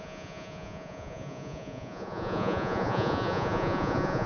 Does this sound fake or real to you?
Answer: fake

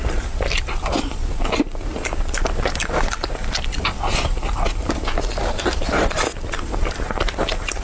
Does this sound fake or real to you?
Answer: real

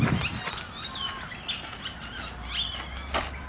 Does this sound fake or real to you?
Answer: real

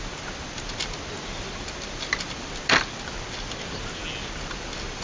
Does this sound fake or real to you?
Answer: real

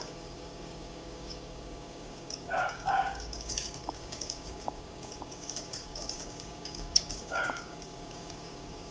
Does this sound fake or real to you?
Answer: fake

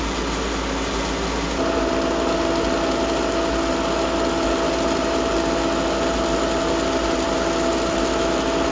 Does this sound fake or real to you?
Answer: real